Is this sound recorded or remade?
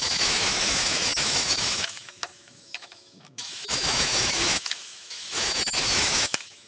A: remade